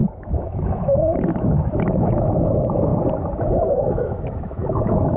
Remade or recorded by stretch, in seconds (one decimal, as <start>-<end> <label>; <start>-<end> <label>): 0.0-2.9 remade; 2.9-3.4 recorded; 3.4-5.2 remade